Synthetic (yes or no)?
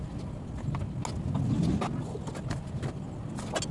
no